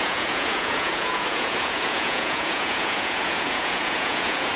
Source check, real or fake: fake